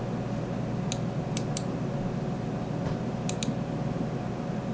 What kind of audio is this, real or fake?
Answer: real